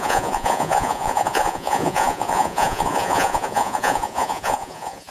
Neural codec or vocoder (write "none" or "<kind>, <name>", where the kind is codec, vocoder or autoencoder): vocoder, Vocos